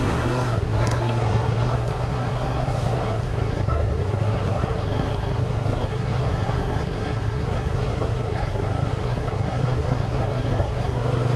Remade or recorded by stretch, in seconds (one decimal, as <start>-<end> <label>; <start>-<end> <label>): 0.0-11.4 remade